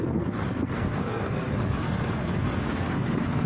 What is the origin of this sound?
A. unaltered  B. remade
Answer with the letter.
B